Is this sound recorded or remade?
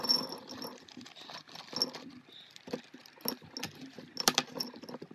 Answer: recorded